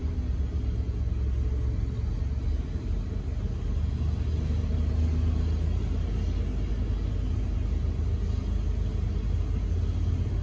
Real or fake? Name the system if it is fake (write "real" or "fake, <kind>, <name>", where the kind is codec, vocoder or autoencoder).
real